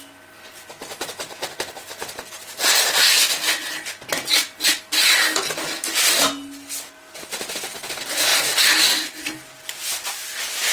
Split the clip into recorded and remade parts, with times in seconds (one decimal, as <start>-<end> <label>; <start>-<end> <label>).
0.0-10.7 recorded